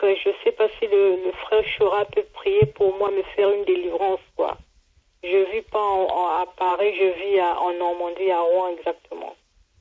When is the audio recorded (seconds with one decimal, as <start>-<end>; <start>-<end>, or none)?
0.0-9.8